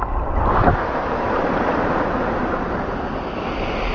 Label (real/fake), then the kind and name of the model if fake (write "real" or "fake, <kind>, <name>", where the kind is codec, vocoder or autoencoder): fake, vocoder, BigVGAN v2